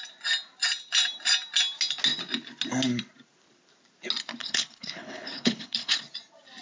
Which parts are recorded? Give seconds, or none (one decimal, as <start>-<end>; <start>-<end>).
0.0-4.4; 6.0-6.6